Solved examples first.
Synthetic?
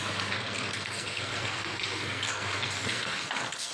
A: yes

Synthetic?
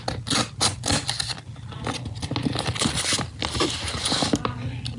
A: no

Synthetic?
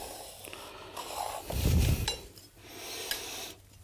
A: no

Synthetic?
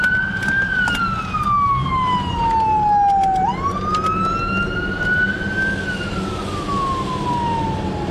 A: no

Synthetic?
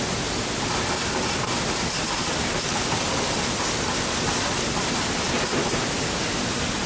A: no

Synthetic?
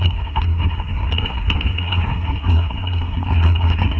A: yes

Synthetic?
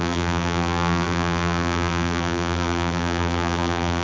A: yes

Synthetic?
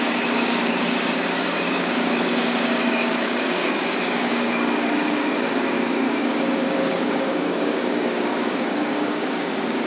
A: yes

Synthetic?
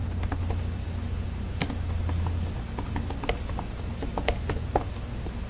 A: no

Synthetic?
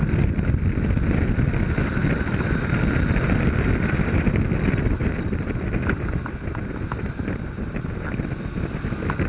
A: no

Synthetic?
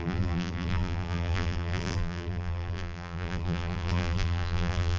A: yes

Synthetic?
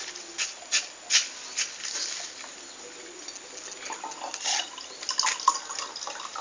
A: no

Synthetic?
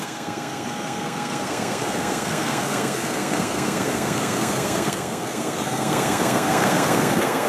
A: yes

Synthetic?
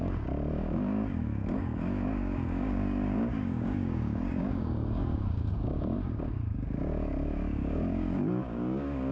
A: yes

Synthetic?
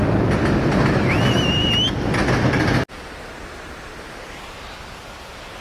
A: no